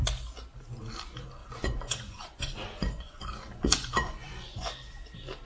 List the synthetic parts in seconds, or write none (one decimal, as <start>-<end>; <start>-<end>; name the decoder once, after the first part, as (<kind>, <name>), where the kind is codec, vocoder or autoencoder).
1.4-4.7 (vocoder, Vocos)